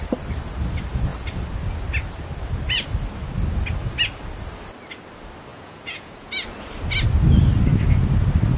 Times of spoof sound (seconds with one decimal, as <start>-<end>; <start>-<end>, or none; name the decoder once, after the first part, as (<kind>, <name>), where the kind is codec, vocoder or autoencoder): 5.5-6.3 (vocoder, Vocos)